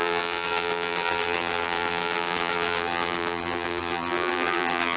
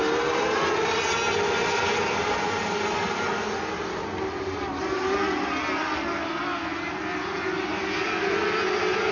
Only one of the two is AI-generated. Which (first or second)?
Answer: first